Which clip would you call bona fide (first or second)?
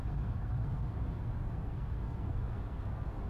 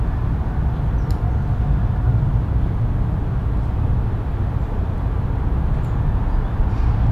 second